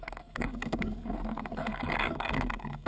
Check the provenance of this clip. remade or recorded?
remade